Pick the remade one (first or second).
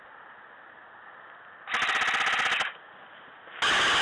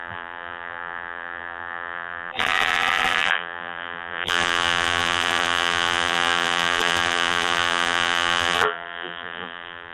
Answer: second